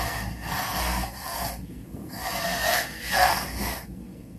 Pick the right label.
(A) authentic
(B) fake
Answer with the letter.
B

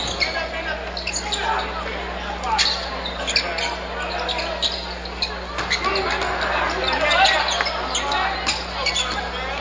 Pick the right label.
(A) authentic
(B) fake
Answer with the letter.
A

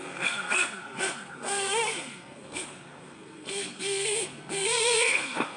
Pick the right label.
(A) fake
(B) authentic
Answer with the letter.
A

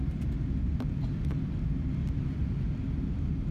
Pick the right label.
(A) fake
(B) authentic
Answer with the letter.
B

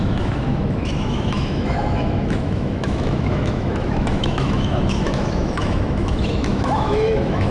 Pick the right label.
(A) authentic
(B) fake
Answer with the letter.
B